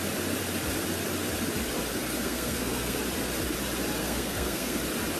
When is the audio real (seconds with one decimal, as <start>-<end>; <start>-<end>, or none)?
0.0-1.9; 3.0-4.0; 4.8-5.2